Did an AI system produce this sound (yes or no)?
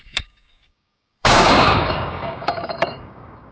yes